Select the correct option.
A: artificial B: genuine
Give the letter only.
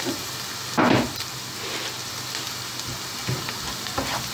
B